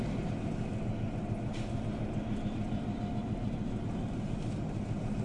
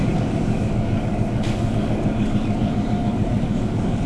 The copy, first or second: second